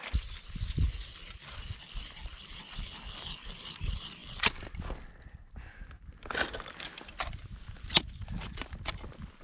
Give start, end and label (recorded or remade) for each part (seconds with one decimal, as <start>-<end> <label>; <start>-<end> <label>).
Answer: 0.0-9.4 recorded